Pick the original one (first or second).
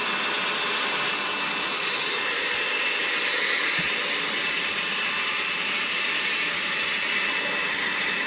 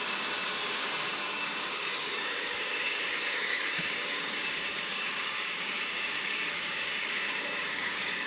first